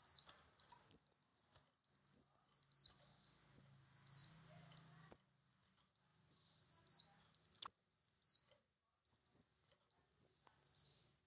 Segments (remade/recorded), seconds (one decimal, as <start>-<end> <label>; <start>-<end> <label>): 0.0-11.3 recorded